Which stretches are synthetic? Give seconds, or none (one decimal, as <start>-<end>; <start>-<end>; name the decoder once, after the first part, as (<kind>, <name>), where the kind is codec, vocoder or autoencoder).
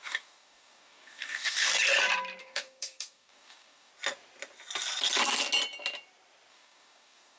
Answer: 0.0-1.7 (codec, DAC); 2.4-3.9; 6.5-7.4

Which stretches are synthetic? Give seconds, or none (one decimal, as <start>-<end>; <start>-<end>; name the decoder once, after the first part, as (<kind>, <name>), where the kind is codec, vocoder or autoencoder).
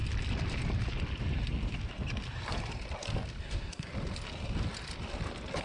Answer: 3.4-3.9 (codec, SNAC)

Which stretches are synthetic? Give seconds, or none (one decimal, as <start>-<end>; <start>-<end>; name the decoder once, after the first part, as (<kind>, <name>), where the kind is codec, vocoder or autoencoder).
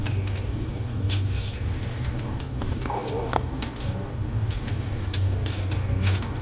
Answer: 0.0-6.4 (codec, DAC)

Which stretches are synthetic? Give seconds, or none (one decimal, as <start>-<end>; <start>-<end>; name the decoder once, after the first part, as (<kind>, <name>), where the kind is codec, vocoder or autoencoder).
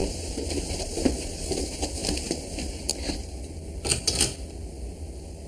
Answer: 0.0-0.8 (vocoder, BigVGAN v2); 2.0-3.4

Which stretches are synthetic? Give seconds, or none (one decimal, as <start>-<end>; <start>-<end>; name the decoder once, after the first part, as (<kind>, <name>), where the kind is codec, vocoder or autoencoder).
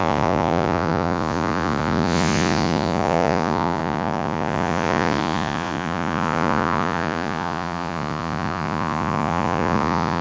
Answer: 0.0-10.2 (vocoder, Vocos)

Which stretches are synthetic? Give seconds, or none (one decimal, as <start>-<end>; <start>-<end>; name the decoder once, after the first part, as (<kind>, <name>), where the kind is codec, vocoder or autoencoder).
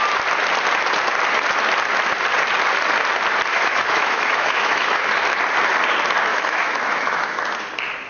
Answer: 3.5-5.1 (autoencoder, DAC-VAE); 6.3-7.4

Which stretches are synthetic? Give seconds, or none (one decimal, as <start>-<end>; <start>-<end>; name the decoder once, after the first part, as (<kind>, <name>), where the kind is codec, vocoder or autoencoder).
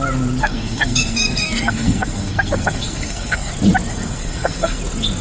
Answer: 0.4-3.5 (codec, SNAC); 3.9-4.8